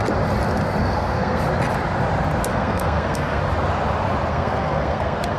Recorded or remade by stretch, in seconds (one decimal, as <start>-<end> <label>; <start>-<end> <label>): 0.0-0.8 recorded; 0.8-1.4 remade; 1.4-2.5 recorded; 2.5-3.4 remade; 3.4-4.3 recorded; 4.3-5.4 remade